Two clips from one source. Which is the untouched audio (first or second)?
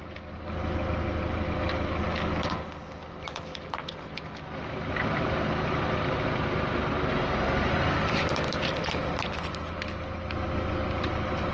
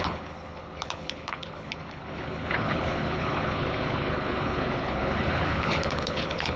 first